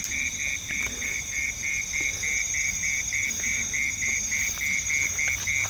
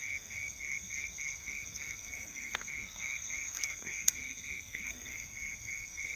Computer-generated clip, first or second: second